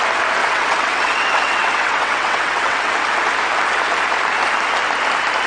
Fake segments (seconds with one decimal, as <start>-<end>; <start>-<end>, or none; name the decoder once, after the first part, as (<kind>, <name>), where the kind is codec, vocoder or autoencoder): 0.4-2.9 (vocoder, WaveNeXt)